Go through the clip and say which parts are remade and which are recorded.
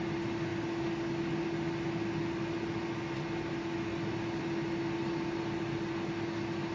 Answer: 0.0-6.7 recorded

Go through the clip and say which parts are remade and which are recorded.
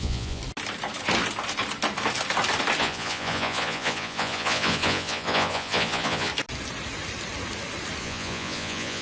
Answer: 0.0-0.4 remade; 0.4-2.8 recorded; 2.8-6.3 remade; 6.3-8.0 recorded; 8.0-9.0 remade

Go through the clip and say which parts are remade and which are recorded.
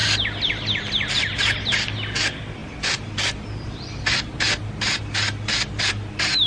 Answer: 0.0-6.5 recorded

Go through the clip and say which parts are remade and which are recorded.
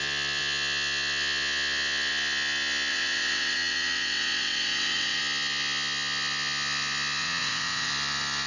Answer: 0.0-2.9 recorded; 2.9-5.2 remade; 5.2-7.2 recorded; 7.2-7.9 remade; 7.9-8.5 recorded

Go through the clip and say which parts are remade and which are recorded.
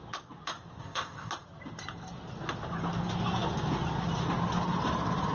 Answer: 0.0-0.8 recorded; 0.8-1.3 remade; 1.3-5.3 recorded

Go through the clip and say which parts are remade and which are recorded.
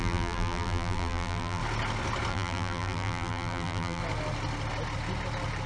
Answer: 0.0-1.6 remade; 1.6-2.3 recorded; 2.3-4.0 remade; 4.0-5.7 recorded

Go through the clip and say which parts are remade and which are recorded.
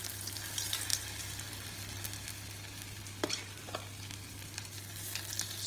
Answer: 0.0-5.7 recorded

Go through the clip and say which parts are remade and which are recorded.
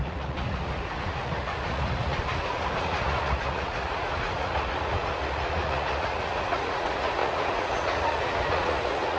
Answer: 0.0-9.2 remade